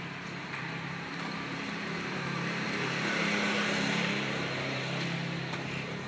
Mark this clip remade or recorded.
remade